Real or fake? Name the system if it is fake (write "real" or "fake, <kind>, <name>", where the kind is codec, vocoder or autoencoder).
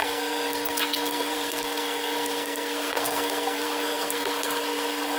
fake, codec, SNAC